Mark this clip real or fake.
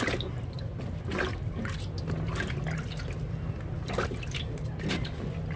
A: real